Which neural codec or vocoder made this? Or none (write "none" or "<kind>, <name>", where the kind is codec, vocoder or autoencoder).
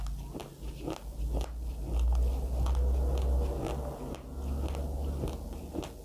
none